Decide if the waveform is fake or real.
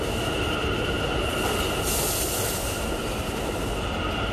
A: real